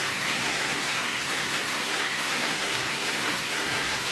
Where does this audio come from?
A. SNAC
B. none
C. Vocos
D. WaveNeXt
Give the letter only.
A